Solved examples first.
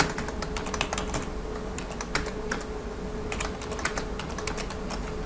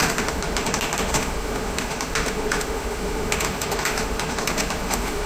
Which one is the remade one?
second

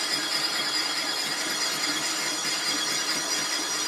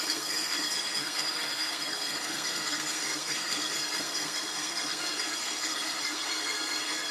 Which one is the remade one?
second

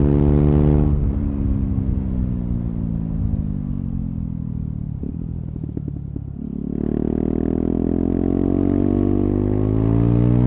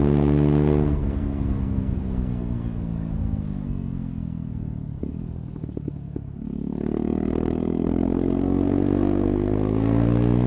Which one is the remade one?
second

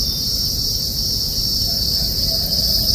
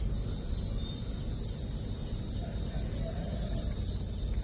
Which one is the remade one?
first